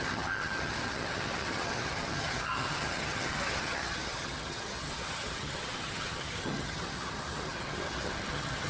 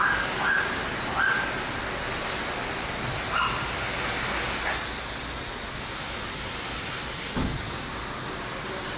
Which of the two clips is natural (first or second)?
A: second